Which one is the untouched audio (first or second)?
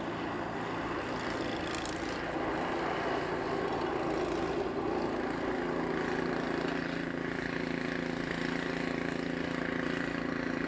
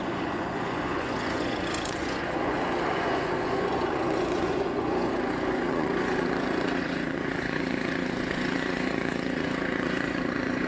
first